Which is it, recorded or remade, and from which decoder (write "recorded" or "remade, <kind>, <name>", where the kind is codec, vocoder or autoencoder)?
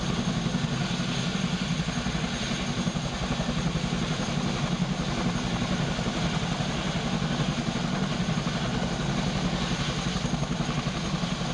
recorded